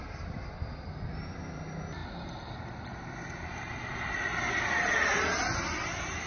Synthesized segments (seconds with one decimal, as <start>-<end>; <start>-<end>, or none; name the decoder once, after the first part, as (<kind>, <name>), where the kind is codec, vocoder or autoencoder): none